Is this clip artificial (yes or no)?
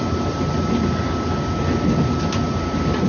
no